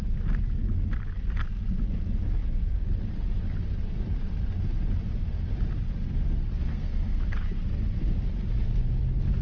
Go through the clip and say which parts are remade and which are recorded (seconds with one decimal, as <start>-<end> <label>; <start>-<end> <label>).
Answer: 0.0-6.7 recorded; 6.7-7.2 remade; 7.2-9.4 recorded